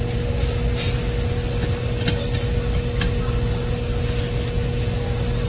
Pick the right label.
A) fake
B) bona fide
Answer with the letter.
B